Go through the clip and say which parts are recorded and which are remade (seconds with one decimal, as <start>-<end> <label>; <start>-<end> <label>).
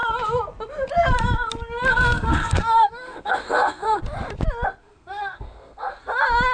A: 0.0-1.9 recorded; 1.9-4.0 remade; 4.0-4.8 recorded; 4.8-6.0 remade; 6.0-6.5 recorded